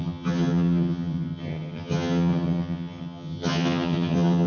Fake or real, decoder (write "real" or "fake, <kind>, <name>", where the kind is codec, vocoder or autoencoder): fake, vocoder, HiFi-GAN